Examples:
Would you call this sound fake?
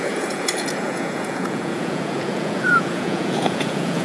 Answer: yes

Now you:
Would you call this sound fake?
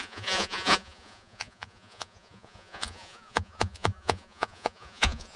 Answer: yes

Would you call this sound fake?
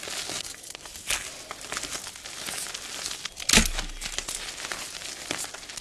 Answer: no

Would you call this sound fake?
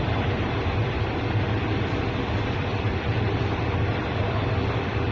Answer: yes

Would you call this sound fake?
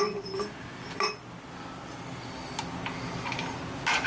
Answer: no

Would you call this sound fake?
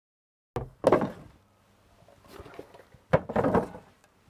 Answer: no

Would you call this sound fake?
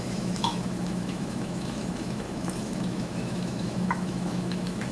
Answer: yes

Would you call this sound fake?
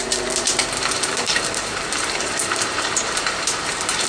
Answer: yes